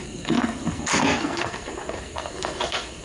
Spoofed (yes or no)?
yes